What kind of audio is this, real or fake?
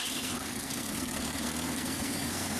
fake